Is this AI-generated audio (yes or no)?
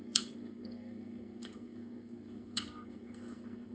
yes